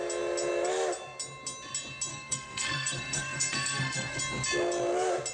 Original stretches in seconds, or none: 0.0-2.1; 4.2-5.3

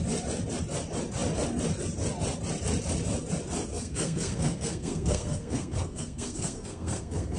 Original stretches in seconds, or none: 0.0-3.7

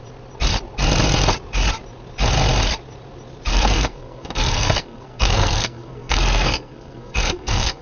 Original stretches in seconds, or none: 0.0-3.5

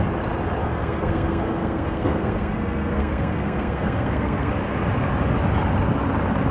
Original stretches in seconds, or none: 0.0-0.6; 4.5-6.5